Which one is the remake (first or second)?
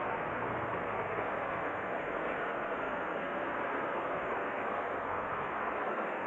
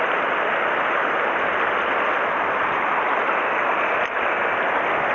first